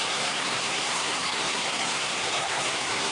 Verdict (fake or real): fake